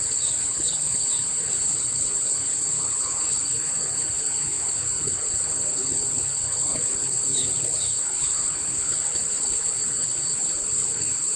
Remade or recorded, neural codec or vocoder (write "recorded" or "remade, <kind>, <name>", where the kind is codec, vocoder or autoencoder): remade, codec, HILCodec